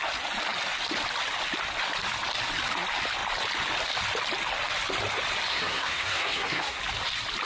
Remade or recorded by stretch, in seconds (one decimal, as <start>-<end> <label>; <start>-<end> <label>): 0.0-5.5 recorded; 5.5-6.8 remade; 6.8-7.5 recorded